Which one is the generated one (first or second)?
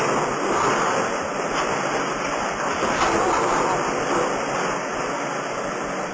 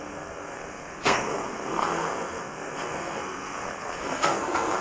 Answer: second